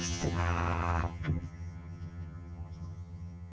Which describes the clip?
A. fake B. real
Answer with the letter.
A